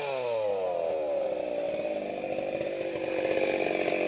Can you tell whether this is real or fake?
real